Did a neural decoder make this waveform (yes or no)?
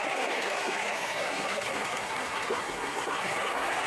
yes